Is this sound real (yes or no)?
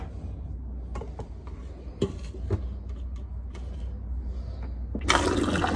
yes